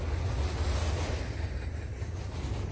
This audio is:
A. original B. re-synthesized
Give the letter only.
A